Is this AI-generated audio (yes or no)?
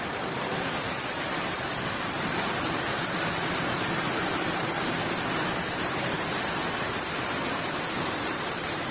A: yes